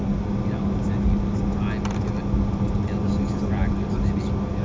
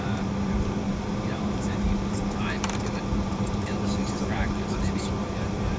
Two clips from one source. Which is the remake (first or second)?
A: second